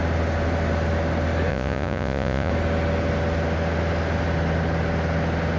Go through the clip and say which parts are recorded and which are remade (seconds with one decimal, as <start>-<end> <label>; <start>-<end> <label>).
0.0-1.5 recorded; 1.5-2.5 remade; 2.5-5.6 recorded